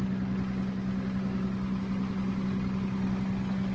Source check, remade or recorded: recorded